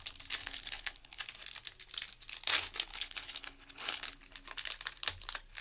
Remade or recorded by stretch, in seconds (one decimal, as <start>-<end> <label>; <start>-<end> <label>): 0.0-0.4 recorded; 0.4-1.2 remade; 1.2-2.9 recorded; 2.9-4.2 remade; 4.2-5.6 recorded